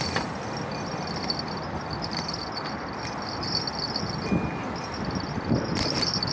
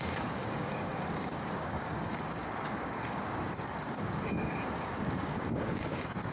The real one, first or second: first